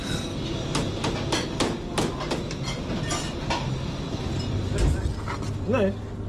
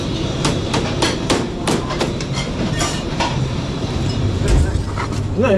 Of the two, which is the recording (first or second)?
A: first